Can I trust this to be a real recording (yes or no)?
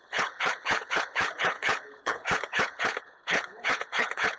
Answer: no